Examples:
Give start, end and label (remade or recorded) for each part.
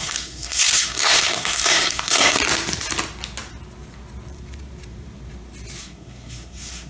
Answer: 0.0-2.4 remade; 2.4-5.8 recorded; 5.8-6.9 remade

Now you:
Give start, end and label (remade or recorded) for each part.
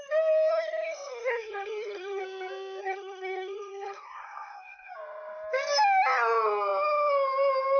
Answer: 0.0-0.5 recorded; 0.5-2.2 remade; 2.2-2.8 recorded; 2.8-4.9 remade; 4.9-7.8 recorded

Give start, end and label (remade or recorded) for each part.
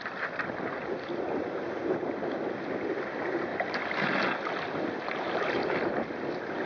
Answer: 0.0-6.7 recorded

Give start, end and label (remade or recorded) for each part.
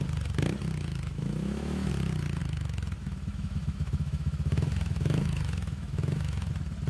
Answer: 0.0-0.9 recorded; 0.9-1.9 remade; 1.9-2.4 recorded; 2.4-6.5 remade; 6.5-6.9 recorded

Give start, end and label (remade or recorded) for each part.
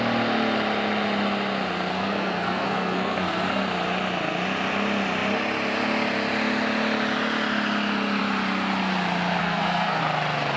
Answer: 0.0-1.9 recorded; 1.9-3.6 remade; 3.6-9.4 recorded; 9.4-10.0 remade; 10.0-10.6 recorded